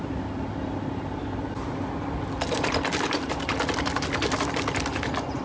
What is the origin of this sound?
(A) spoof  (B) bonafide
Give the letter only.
B